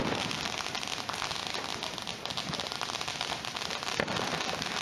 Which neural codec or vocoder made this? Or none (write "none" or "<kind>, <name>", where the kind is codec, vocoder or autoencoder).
none